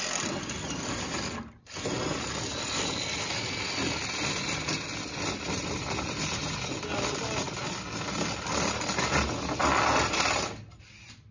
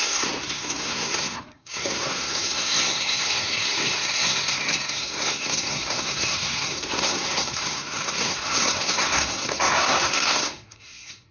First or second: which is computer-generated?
second